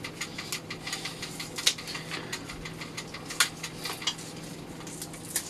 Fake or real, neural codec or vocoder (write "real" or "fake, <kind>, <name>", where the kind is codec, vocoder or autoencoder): real